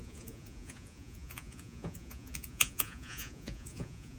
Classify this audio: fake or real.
fake